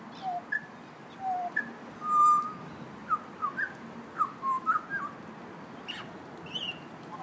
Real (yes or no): yes